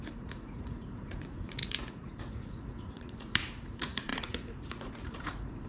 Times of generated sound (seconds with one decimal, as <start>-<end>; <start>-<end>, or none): 0.0-5.7